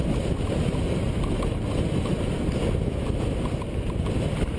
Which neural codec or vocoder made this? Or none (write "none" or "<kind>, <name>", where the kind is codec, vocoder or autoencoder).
none